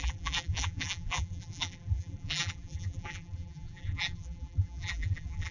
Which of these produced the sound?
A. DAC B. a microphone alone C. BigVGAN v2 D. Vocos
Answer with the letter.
C